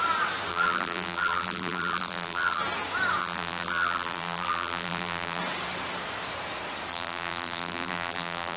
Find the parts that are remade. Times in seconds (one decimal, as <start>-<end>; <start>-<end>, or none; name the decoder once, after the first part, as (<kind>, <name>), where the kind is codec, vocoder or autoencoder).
0.5-2.6 (vocoder, BigVGAN v2); 3.2-5.4; 6.9-8.6